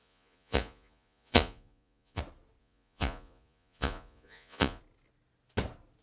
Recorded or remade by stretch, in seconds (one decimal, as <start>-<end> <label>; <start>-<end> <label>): 0.0-2.2 remade; 2.2-2.6 recorded; 2.6-4.8 remade; 4.8-6.0 recorded

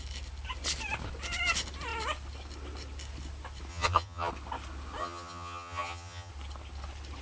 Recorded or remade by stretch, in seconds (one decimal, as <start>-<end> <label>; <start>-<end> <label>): 0.0-3.7 recorded; 3.7-4.3 remade; 4.3-5.0 recorded; 5.0-6.3 remade; 6.3-7.2 recorded

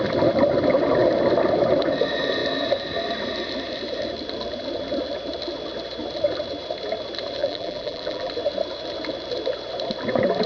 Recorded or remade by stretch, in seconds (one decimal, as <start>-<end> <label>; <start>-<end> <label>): 0.0-7.4 recorded; 7.4-8.3 remade; 8.3-10.5 recorded

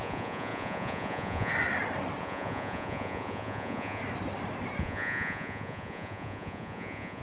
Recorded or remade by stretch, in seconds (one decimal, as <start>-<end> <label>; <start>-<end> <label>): 0.0-1.5 remade; 1.5-2.2 recorded; 2.2-4.0 remade; 4.0-4.8 recorded; 4.8-7.2 remade

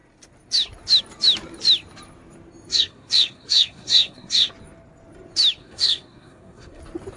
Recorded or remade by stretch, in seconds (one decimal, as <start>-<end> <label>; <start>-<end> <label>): 0.0-2.7 recorded; 2.7-4.5 remade; 4.5-5.6 recorded; 5.6-6.8 remade; 6.8-7.2 recorded

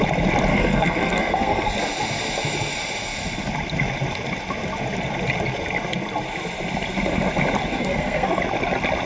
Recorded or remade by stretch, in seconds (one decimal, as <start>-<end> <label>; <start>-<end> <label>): 0.0-0.5 recorded; 0.5-1.8 remade; 1.8-7.7 recorded; 7.7-8.4 remade; 8.4-9.1 recorded